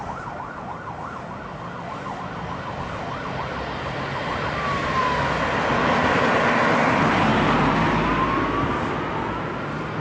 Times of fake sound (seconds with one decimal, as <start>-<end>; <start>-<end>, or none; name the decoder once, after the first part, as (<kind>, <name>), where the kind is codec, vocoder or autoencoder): none